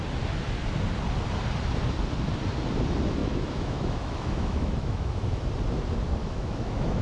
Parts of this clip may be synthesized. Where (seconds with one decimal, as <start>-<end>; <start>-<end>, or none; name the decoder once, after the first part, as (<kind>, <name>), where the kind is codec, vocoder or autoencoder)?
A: 3.2-5.4 (autoencoder, DAC-VAE); 6.2-7.0